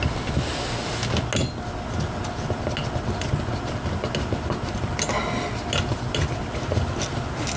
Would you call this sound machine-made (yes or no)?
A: no